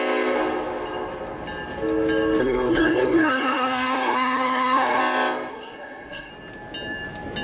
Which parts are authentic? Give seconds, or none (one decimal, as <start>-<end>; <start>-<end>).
0.0-2.4; 5.0-5.5; 6.3-7.4